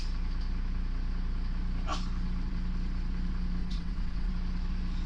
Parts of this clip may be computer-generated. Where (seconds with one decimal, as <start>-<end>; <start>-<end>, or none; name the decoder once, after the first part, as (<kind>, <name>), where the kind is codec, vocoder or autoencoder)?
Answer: 3.6-4.3 (vocoder, WaveNeXt)